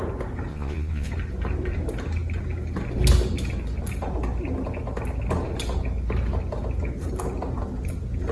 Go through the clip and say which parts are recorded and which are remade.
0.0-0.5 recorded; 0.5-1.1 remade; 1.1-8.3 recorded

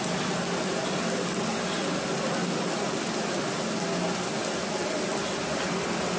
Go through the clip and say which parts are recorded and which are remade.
0.0-6.2 recorded

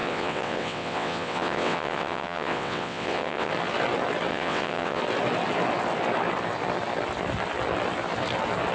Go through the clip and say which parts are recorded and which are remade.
0.0-3.5 remade; 3.5-4.3 recorded; 4.3-5.0 remade; 5.0-8.7 recorded

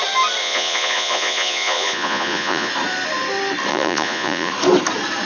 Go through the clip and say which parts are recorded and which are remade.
0.0-0.4 recorded; 0.4-2.7 remade; 2.7-3.7 recorded; 3.7-4.5 remade; 4.5-5.3 recorded

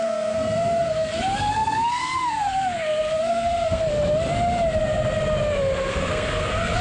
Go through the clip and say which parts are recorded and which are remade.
0.0-3.9 remade; 3.9-5.9 recorded; 5.9-6.8 remade

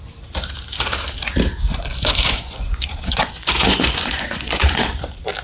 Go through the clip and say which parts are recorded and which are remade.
0.0-1.7 recorded; 1.7-4.9 remade; 4.9-5.4 recorded

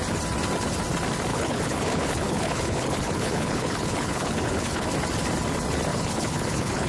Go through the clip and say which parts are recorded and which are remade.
0.0-1.3 recorded; 1.3-4.9 remade; 4.9-5.9 recorded; 5.9-6.9 remade

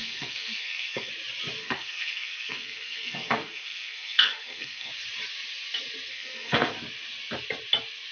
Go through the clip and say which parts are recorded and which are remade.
0.0-1.1 remade; 1.1-1.6 recorded; 1.6-4.9 remade; 4.9-6.1 recorded; 6.1-6.7 remade; 6.7-8.1 recorded